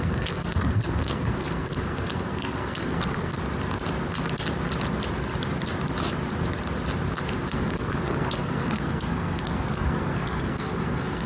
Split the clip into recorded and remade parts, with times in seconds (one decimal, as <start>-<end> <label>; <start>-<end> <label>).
0.0-3.4 remade; 3.4-7.5 recorded; 7.5-11.3 remade